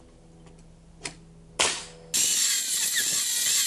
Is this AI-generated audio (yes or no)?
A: no